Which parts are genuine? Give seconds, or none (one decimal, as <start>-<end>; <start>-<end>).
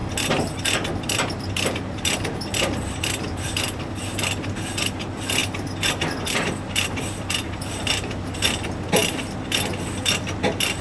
0.0-1.0; 5.4-5.9